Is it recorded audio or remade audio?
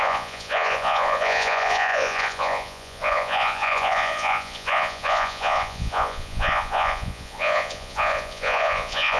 remade